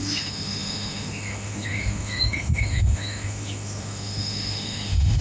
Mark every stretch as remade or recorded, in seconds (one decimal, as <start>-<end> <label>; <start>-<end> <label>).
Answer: 0.0-5.2 remade